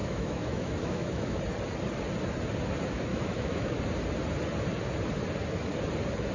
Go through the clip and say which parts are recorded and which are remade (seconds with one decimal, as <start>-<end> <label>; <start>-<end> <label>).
0.0-1.4 remade; 1.4-3.1 recorded; 3.1-3.8 remade; 3.8-6.3 recorded